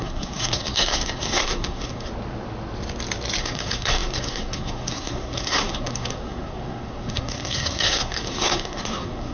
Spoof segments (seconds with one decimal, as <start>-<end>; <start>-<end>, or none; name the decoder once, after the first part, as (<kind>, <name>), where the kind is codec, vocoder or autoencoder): 0.0-2.1 (codec, SNAC); 3.4-9.3